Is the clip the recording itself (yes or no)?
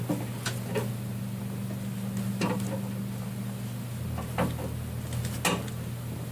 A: yes